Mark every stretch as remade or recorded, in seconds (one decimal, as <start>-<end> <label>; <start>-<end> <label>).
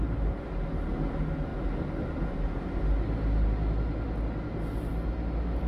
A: 0.0-5.7 recorded